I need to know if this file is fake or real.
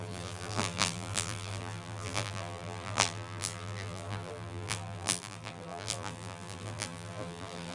fake